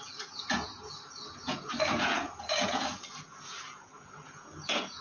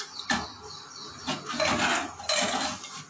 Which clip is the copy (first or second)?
first